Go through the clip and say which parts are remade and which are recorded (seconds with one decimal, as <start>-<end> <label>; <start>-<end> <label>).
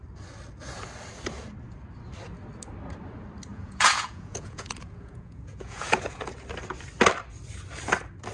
0.0-3.5 recorded; 3.5-6.3 remade; 6.3-8.3 recorded